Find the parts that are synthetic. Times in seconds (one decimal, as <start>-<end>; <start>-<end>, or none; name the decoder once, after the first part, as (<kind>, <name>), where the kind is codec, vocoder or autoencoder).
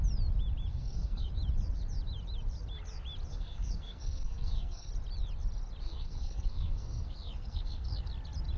0.7-1.3 (codec, SNAC); 3.3-4.9; 5.8-8.1